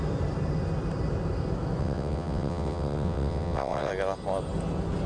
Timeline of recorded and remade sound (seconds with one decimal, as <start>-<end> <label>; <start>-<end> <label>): 0.0-1.8 recorded; 1.8-3.9 remade; 3.9-5.1 recorded